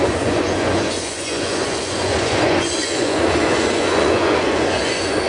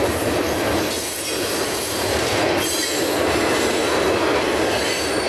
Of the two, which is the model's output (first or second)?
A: first